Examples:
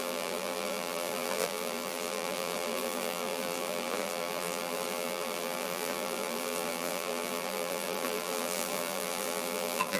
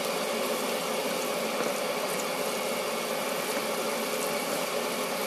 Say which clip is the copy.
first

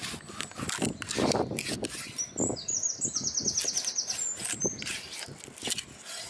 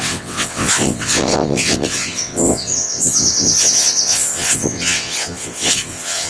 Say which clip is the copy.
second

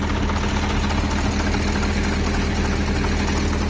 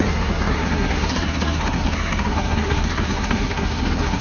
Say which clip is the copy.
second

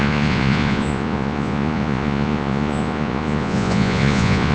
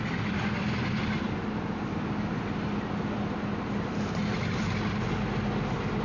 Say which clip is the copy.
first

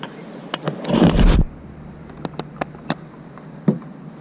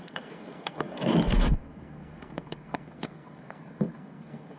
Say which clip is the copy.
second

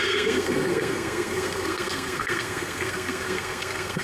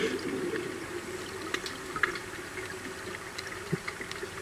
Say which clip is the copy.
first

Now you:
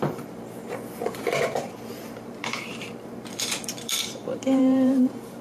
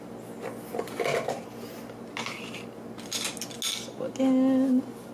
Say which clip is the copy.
first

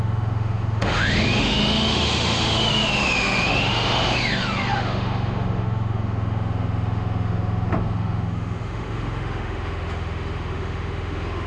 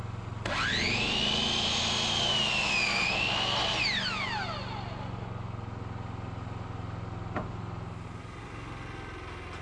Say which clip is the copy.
first